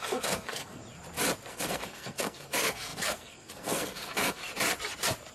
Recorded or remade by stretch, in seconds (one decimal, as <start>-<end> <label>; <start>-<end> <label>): 0.0-0.8 remade; 0.8-1.5 recorded; 1.5-4.4 remade; 4.4-5.3 recorded